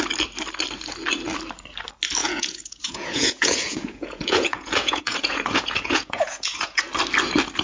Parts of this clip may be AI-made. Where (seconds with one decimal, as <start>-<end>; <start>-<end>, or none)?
2.2-6.8

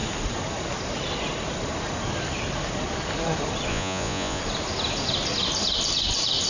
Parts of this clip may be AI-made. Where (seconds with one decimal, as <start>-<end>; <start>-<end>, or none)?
3.7-4.4